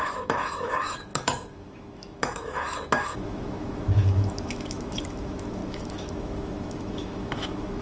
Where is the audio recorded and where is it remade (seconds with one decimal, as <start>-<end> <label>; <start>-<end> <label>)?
0.0-7.8 remade